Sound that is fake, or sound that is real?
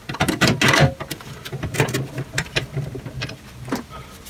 real